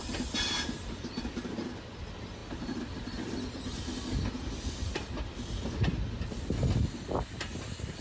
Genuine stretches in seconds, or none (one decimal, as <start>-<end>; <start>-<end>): 0.0-8.0